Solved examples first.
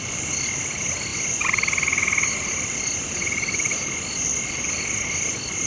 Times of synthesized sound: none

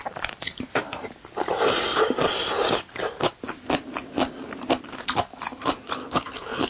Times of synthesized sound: 6.0-6.7 (codec, HILCodec)

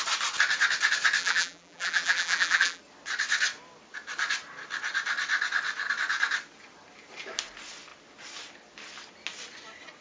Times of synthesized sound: 1.2-2.8 (vocoder, BigVGAN v2)

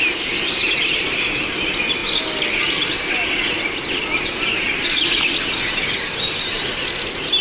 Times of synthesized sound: none

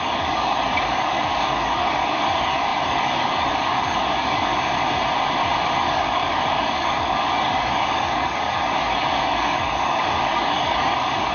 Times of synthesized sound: 0.0-4.5 (codec, DAC); 5.8-11.3

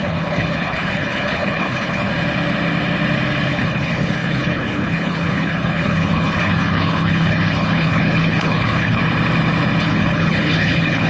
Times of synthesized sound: 0.0-2.1 (codec, HILCodec); 3.5-9.0; 9.8-11.1

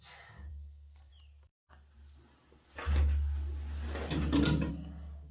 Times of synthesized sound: 0.5-1.1 (codec, SNAC)